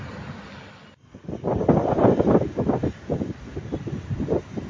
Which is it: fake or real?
real